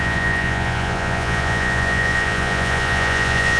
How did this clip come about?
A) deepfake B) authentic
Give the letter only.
A